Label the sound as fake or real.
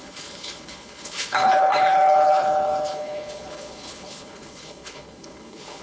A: fake